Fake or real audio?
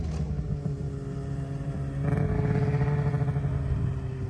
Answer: real